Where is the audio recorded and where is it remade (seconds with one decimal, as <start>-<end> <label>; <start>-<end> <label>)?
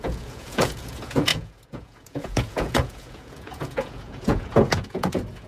0.0-5.5 remade